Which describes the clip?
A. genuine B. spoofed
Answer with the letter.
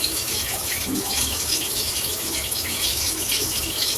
B